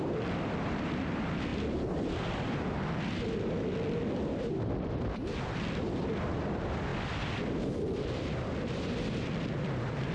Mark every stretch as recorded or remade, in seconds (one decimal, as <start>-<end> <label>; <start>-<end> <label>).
0.0-1.5 remade; 1.5-5.4 recorded; 5.4-6.9 remade; 6.9-7.9 recorded; 7.9-10.1 remade